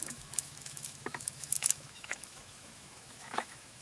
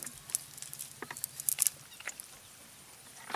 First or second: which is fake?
first